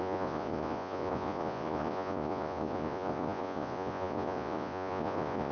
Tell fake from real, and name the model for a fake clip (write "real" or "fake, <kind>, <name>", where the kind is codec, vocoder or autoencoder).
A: fake, vocoder, Vocos